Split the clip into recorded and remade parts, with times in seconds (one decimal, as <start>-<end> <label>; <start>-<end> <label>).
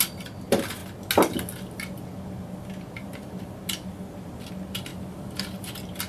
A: 0.0-6.1 recorded